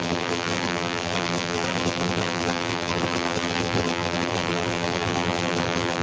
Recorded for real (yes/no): no